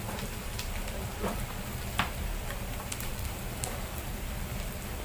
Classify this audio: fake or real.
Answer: fake